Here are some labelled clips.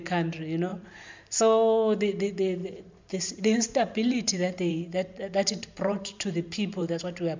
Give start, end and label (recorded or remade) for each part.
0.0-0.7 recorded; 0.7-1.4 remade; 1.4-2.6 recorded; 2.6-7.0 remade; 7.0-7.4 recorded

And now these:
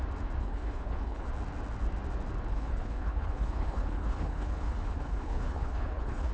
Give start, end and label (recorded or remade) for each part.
0.0-0.4 recorded; 0.4-1.3 remade; 1.3-2.5 recorded; 2.5-6.3 remade

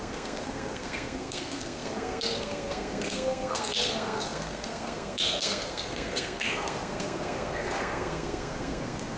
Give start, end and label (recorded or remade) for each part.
0.0-9.2 remade